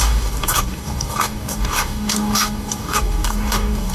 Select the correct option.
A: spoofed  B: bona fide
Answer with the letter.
A